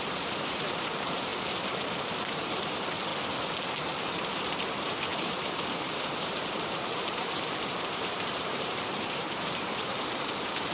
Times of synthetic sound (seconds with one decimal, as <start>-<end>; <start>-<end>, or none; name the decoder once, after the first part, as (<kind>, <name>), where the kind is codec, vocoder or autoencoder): 0.0-1.3 (vocoder, BigVGAN v2); 2.1-3.1; 3.9-10.7